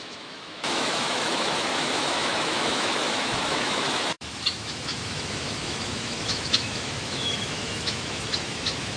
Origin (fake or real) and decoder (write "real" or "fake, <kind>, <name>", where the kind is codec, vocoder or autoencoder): fake, autoencoder, DAC-VAE